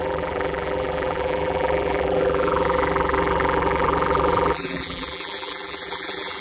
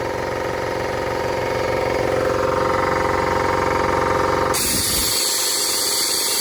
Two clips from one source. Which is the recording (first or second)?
second